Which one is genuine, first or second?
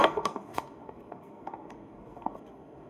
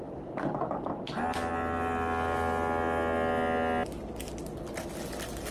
second